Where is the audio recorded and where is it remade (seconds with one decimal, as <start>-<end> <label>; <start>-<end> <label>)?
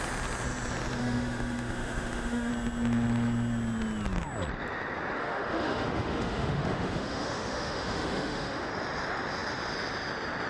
0.0-1.0 recorded; 1.0-2.5 remade; 2.5-5.2 recorded; 5.2-8.7 remade; 8.7-10.5 recorded